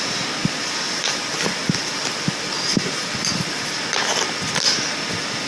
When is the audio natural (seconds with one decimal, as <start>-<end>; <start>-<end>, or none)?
0.0-0.4; 3.7-5.5